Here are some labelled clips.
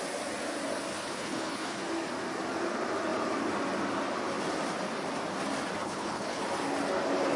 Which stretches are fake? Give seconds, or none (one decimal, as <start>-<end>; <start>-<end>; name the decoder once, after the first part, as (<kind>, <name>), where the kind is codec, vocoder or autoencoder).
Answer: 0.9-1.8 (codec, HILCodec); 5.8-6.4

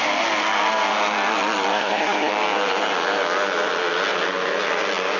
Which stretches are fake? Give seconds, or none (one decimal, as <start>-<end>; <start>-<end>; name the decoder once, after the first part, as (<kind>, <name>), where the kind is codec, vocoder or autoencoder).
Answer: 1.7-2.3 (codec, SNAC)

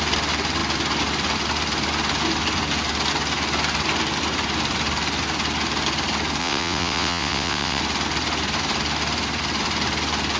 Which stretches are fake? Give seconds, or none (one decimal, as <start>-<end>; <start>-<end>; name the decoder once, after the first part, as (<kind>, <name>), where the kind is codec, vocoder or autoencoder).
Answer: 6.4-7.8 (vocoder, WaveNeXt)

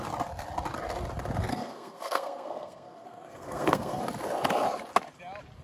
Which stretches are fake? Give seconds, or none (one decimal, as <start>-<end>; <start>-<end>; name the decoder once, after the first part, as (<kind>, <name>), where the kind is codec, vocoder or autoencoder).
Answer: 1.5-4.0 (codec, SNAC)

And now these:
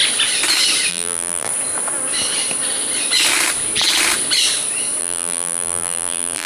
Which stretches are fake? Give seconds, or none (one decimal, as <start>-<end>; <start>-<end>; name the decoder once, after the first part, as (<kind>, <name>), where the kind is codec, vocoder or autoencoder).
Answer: 0.9-1.5 (vocoder, BigVGAN v2); 5.0-6.5

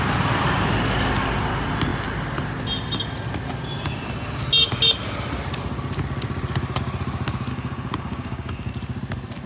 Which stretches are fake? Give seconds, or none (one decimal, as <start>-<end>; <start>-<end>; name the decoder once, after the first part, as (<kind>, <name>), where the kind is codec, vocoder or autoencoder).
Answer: 7.5-8.7 (codec, DAC)